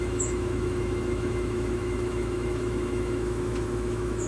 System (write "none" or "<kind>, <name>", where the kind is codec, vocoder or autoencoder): autoencoder, DAC-VAE